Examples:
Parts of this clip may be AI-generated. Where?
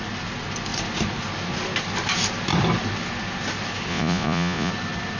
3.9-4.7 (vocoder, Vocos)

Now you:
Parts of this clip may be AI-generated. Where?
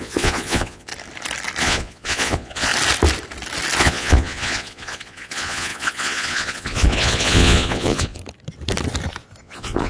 0.0-0.9 (vocoder, Vocos); 1.6-2.7; 3.8-8.2; 9.4-9.9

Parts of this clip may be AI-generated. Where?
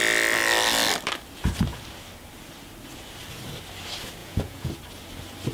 4.2-4.7 (vocoder, Vocos)